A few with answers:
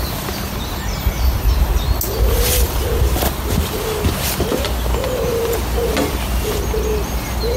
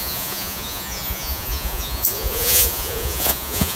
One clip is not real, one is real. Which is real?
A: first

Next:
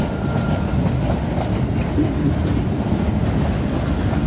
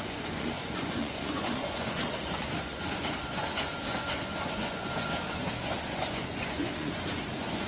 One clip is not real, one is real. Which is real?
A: first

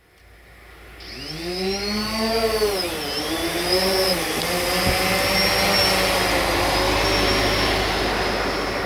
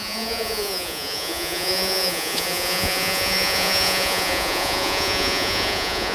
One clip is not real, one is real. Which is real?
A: first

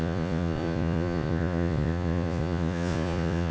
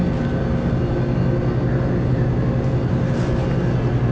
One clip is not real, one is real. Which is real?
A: second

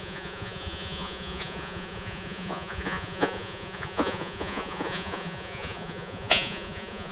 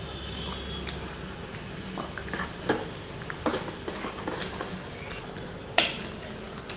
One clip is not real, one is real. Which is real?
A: second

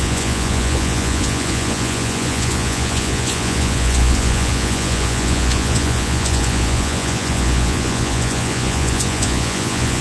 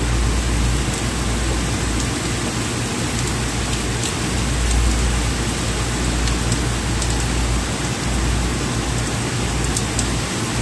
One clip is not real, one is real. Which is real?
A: second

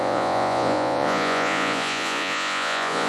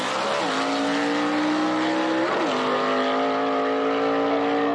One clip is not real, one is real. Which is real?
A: second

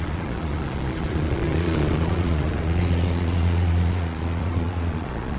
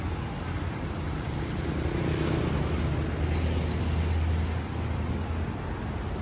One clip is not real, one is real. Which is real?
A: second